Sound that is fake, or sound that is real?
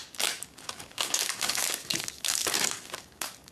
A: fake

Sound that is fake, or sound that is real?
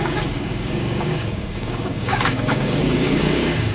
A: fake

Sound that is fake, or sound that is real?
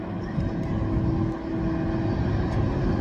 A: real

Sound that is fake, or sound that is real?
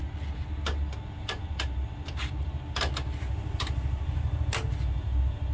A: real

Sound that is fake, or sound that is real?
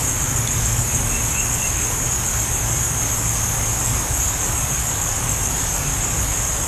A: fake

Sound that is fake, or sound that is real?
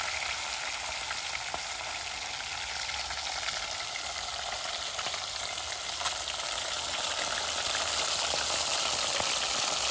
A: real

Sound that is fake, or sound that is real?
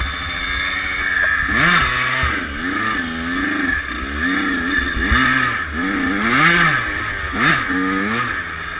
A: real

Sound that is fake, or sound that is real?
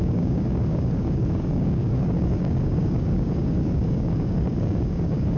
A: fake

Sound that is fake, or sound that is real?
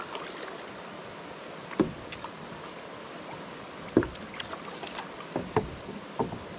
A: real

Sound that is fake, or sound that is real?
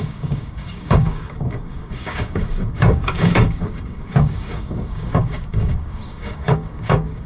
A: fake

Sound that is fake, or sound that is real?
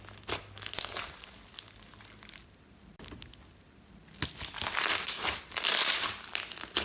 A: real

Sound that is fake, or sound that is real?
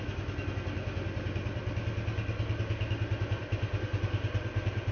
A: real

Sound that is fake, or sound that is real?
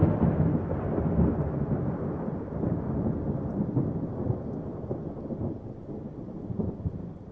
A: real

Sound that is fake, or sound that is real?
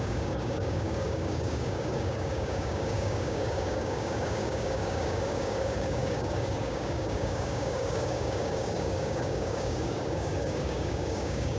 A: fake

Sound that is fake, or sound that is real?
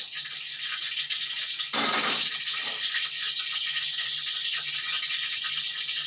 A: real